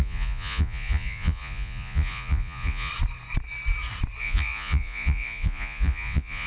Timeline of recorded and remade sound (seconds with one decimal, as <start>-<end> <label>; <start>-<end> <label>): 0.0-2.9 remade; 2.9-4.2 recorded; 4.2-6.5 remade